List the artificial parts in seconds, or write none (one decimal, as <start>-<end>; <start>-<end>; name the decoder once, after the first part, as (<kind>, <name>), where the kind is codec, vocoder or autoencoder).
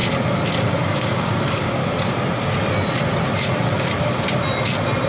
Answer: 0.6-1.8 (codec, DAC)